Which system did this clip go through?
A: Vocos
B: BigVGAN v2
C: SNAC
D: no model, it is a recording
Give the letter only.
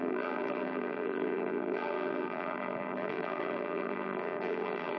B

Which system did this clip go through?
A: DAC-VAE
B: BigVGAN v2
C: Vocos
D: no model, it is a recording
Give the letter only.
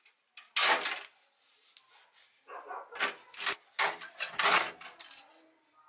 D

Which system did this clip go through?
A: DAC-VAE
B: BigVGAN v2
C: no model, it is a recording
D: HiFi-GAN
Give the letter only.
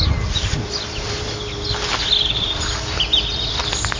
C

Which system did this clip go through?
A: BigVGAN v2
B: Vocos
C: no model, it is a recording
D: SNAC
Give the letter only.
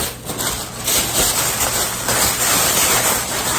C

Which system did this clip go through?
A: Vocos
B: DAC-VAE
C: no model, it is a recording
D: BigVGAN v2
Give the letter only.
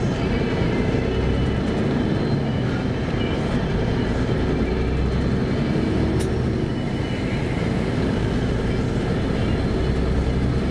C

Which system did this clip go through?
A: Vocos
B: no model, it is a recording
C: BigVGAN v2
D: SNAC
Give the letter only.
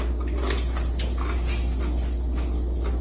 B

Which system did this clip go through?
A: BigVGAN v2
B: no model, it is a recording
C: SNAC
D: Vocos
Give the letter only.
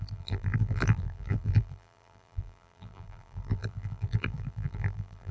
A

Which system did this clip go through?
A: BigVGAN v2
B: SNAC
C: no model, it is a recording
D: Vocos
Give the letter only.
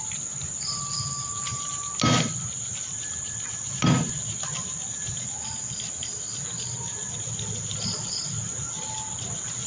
C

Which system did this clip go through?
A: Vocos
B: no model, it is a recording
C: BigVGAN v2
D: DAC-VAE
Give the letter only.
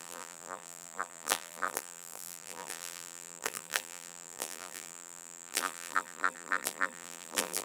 C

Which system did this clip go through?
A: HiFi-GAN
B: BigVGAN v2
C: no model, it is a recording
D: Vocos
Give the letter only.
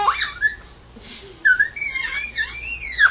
C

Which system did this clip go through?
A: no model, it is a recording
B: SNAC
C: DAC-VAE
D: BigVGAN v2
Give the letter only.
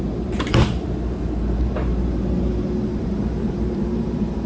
D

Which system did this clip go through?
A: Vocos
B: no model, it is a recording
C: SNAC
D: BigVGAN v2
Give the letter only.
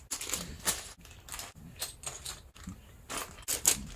B